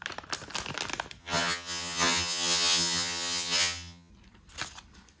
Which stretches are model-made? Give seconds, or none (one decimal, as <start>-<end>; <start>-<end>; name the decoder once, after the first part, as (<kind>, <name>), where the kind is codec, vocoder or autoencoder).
1.2-4.1 (vocoder, HiFi-GAN)